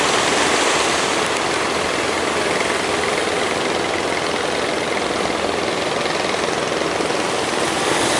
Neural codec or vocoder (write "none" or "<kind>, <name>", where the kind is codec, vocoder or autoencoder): none